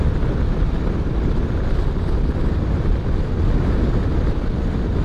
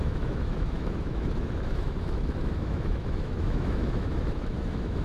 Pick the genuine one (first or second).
first